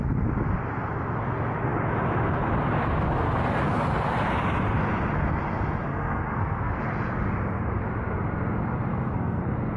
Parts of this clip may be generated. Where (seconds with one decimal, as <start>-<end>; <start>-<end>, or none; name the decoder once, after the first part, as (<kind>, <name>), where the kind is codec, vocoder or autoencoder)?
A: 5.9-6.8 (codec, SNAC); 8.9-9.4